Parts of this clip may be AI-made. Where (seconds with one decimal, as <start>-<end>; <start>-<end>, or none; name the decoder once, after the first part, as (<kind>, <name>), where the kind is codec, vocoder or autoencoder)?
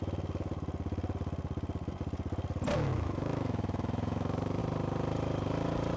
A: 2.9-4.6 (autoencoder, DAC-VAE)